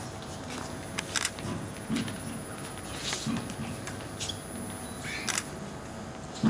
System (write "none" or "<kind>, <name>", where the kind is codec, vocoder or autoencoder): none